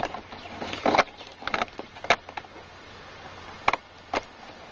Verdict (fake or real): fake